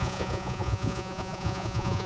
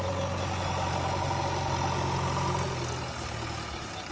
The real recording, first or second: second